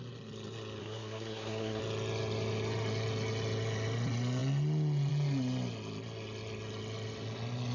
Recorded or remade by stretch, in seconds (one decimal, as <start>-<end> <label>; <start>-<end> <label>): 0.0-0.8 recorded; 0.8-1.8 remade; 1.8-7.7 recorded

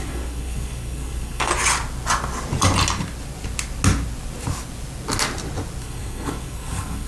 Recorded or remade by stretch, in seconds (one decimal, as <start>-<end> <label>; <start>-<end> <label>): 0.0-1.5 remade; 1.5-5.8 recorded; 5.8-7.1 remade

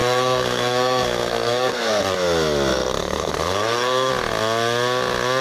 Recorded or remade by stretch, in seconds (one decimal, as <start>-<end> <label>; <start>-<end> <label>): 0.0-2.0 remade; 2.0-3.0 recorded; 3.0-4.1 remade; 4.1-5.4 recorded

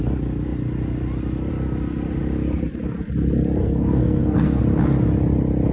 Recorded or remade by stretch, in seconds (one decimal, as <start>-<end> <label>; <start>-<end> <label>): 0.0-3.6 recorded; 3.6-4.6 remade; 4.6-5.7 recorded

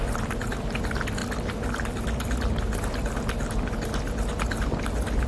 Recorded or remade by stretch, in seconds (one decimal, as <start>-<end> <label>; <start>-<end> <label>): 0.0-5.3 recorded

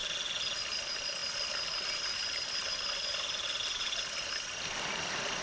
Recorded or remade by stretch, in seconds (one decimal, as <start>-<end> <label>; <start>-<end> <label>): 0.0-5.4 recorded